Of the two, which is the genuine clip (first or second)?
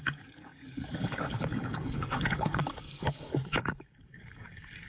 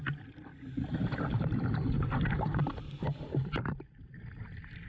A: second